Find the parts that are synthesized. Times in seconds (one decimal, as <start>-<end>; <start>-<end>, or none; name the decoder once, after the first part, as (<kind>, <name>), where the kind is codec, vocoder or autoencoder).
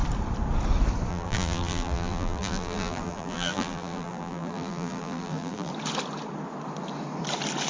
1.1-5.7 (vocoder, BigVGAN v2)